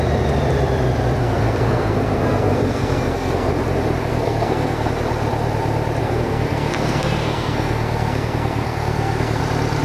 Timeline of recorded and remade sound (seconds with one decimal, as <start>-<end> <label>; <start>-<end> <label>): 0.0-1.2 recorded; 1.2-3.5 remade; 3.5-4.1 recorded; 4.1-4.9 remade; 4.9-6.0 recorded; 6.0-9.4 remade; 9.4-9.8 recorded